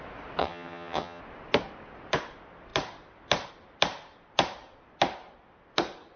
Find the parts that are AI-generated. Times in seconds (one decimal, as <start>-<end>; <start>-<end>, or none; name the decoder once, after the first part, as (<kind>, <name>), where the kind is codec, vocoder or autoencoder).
0.4-1.2 (vocoder, HiFi-GAN)